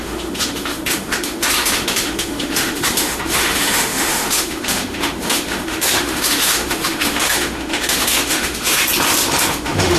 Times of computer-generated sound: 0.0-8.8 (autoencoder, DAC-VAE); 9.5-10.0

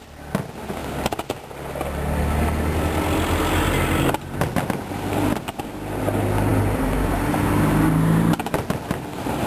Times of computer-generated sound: none

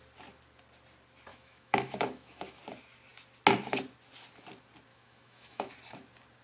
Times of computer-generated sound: 1.3-2.6 (autoencoder, DAC-VAE); 4.9-5.7

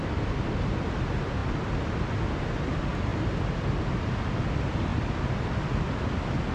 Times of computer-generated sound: none